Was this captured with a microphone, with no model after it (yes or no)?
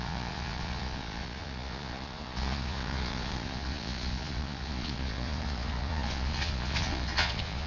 no